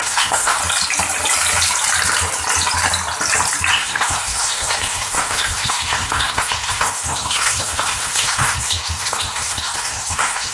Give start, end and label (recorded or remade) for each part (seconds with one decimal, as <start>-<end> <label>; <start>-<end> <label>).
0.0-0.6 remade; 0.6-3.7 recorded; 3.7-10.5 remade